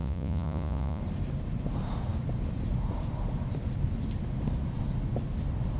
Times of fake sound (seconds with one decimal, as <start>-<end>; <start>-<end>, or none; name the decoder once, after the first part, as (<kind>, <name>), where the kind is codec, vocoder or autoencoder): 0.0-1.0 (vocoder, Vocos)